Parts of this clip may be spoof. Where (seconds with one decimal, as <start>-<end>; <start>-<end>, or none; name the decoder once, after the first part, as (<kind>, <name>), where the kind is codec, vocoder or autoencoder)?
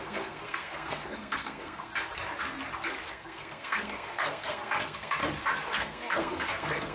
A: 0.0-1.9 (codec, SNAC); 3.1-5.2; 5.7-6.9